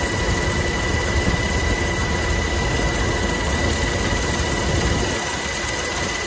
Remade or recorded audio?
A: recorded